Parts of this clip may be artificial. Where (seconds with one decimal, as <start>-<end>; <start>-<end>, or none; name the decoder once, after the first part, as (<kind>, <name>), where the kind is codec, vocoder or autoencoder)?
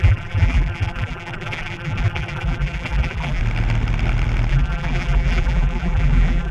0.0-3.4 (vocoder, BigVGAN v2); 4.5-6.5